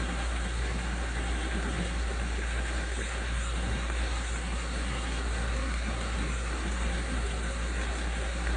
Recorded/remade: remade